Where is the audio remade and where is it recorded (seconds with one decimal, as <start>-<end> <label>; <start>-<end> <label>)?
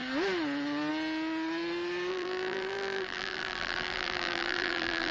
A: 0.0-2.1 recorded; 2.1-5.1 remade